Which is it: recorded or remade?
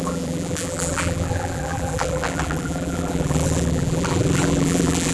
remade